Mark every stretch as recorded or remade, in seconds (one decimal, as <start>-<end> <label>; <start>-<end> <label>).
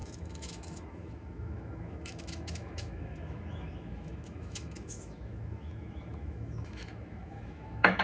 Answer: 0.0-8.0 remade